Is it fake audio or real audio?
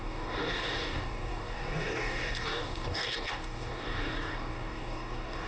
fake